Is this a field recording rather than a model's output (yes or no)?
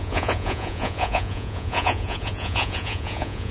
no